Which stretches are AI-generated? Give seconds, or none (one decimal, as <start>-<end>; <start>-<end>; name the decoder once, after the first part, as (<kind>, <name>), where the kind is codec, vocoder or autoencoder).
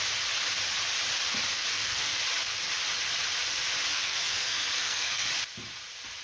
1.7-2.2 (codec, SNAC); 3.9-5.3